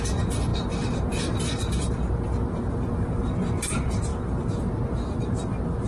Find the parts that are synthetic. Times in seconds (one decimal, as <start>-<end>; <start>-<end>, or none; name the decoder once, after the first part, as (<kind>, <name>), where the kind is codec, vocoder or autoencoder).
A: none